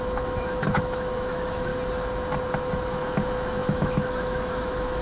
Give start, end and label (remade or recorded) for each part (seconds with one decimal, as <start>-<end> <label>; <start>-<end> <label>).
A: 0.0-1.7 remade; 1.7-2.7 recorded; 2.7-5.0 remade